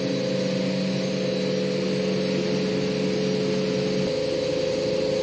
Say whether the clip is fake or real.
real